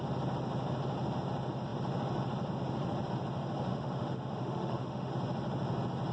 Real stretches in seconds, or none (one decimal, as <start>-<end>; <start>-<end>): 0.0-3.7; 5.1-6.1

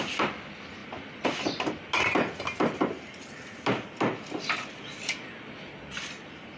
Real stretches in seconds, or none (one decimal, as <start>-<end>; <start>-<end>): 0.0-6.6